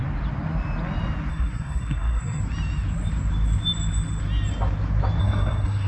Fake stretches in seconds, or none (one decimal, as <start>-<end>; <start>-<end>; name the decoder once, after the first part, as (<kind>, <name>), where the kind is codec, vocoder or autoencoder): 1.3-2.4 (codec, SNAC); 5.2-5.9